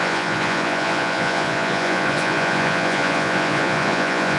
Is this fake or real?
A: fake